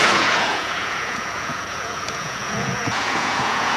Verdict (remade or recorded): remade